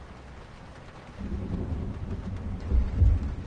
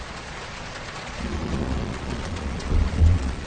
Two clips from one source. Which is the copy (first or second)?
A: second